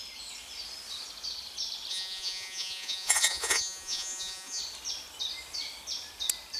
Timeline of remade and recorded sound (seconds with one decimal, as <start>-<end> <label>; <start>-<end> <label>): 0.0-1.9 recorded; 1.9-4.6 remade; 4.6-6.6 recorded